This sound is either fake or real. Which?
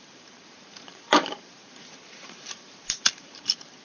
fake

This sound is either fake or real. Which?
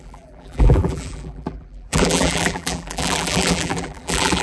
fake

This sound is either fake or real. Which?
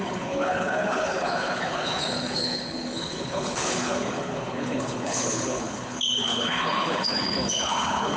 fake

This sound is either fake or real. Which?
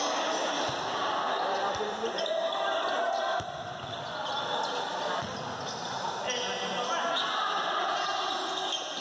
real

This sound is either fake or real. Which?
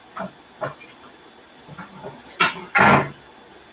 real